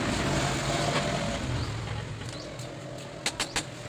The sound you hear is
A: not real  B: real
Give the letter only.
B